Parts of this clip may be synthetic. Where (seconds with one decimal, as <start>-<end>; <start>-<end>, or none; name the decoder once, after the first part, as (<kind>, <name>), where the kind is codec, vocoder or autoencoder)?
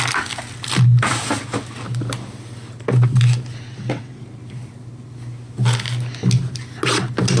3.7-4.2 (vocoder, WaveNeXt)